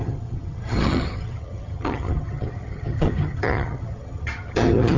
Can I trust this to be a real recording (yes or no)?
no